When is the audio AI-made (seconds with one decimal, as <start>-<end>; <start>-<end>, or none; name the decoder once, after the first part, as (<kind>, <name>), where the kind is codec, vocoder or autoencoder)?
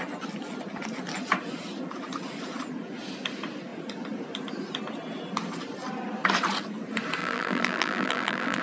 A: 7.2-8.6 (vocoder, BigVGAN v2)